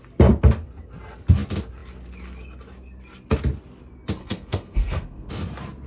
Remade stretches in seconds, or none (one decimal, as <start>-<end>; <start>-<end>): 4.2-5.3

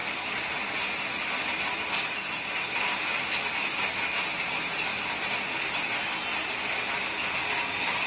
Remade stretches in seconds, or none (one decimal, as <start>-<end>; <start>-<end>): none